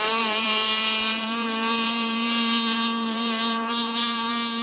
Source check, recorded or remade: remade